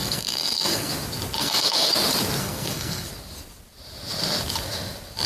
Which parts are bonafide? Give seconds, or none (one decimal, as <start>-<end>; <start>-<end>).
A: 0.9-1.4; 1.9-2.4; 3.1-5.3